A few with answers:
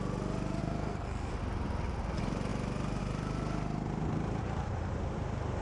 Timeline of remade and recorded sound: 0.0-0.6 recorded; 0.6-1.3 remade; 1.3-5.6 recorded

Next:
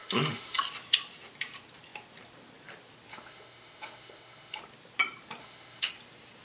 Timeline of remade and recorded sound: 0.0-0.6 remade; 0.6-3.1 recorded; 3.1-4.6 remade; 4.6-5.4 recorded; 5.4-5.9 remade; 5.9-6.4 recorded